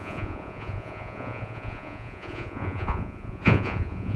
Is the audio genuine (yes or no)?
no